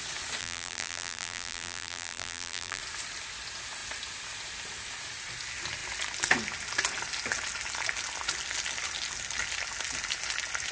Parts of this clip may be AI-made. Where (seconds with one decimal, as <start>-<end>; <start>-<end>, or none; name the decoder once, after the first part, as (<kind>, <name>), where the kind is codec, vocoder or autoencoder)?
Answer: 0.4-2.8 (vocoder, BigVGAN v2)